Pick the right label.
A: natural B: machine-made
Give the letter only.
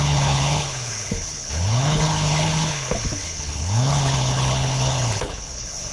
B